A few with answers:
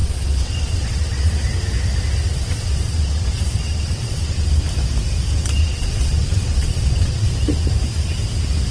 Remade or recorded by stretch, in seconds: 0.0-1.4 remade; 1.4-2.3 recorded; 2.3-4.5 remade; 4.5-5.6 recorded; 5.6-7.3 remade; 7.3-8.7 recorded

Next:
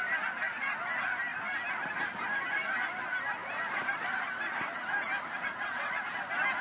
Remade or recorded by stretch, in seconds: 0.0-3.4 recorded; 3.4-5.8 remade; 5.8-6.6 recorded

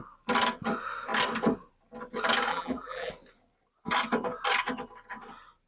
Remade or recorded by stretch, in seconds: 0.0-2.5 recorded; 2.5-3.1 remade; 3.1-5.7 recorded

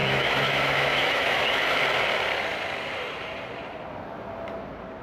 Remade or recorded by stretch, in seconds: 0.0-1.4 remade; 1.4-5.0 recorded